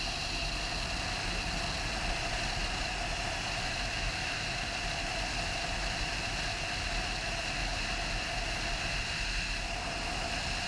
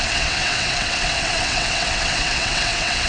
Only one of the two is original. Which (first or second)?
first